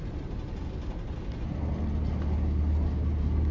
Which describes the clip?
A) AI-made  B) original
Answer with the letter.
B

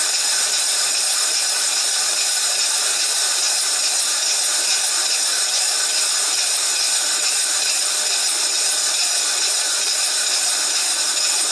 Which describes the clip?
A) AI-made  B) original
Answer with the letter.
B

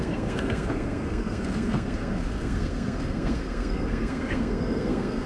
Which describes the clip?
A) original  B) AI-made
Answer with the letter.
B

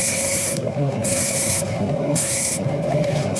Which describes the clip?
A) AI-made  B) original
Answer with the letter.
A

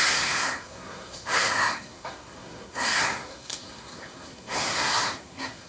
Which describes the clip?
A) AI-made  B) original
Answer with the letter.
A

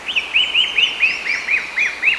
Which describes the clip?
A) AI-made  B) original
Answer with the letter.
B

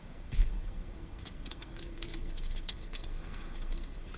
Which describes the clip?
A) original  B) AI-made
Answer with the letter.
B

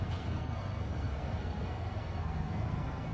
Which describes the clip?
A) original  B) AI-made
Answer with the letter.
B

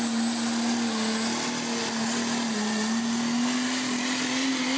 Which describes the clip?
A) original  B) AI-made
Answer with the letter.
A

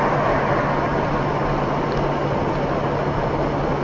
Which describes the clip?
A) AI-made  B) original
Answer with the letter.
B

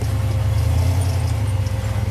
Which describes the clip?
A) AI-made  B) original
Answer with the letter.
B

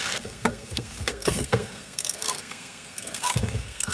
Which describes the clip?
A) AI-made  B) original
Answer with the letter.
A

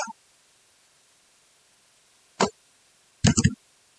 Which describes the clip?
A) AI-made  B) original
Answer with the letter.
B